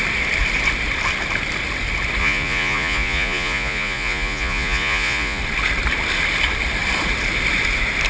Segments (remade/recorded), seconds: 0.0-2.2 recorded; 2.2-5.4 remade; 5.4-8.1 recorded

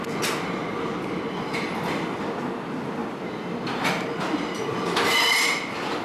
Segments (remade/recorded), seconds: 0.0-6.0 recorded

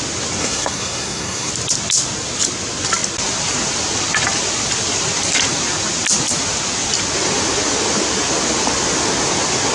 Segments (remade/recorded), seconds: 0.0-0.4 recorded; 0.4-1.5 remade; 1.5-9.7 recorded

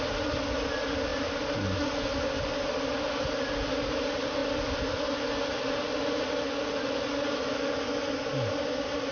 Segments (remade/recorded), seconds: 0.0-9.1 recorded

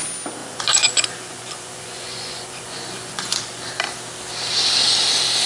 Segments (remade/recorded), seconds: 0.0-0.4 recorded; 0.4-3.7 remade; 3.7-5.5 recorded

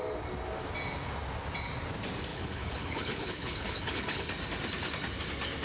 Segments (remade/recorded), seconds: 0.0-2.3 recorded; 2.3-4.3 remade; 4.3-5.6 recorded